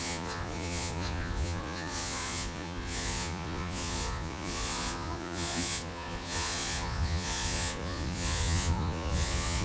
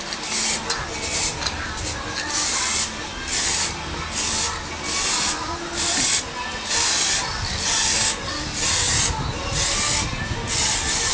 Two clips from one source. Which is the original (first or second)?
second